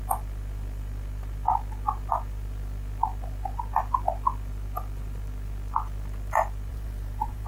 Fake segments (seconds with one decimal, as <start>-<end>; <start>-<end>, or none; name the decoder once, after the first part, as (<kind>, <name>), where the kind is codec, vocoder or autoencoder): 6.7-7.5 (vocoder, BigVGAN v2)

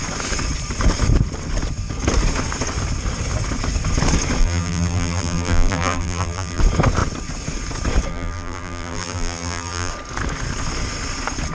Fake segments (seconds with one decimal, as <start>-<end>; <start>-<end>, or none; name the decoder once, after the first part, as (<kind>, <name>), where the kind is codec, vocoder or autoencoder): 4.4-6.6 (vocoder, BigVGAN v2); 8.1-9.9

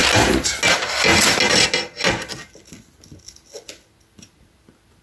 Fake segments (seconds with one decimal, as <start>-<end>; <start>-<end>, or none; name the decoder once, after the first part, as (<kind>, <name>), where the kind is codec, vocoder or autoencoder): none